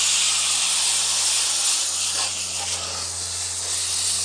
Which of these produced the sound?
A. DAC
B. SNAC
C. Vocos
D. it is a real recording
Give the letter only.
D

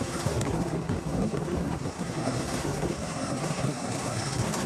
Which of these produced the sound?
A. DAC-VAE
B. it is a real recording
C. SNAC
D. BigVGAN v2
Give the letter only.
C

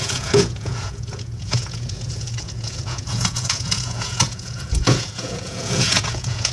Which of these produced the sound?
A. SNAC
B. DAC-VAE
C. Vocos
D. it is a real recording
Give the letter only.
C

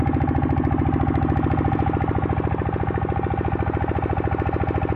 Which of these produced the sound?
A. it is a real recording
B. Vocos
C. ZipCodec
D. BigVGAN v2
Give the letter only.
A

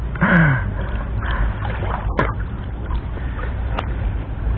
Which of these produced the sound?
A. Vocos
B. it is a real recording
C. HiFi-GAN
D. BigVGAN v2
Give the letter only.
D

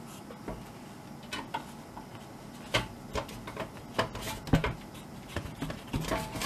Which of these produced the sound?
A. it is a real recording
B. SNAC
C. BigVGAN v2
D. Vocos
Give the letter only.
A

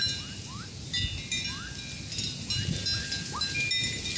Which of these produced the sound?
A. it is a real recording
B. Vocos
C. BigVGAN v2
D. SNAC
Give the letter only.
A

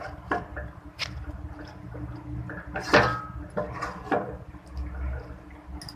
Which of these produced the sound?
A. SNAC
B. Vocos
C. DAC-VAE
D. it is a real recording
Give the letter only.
D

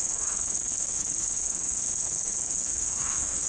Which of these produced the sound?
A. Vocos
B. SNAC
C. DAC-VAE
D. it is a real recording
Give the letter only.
B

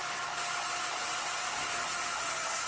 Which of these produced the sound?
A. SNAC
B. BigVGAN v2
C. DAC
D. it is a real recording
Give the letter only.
D